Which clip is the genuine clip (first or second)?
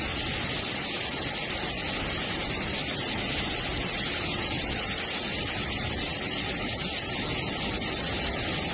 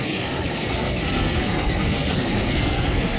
first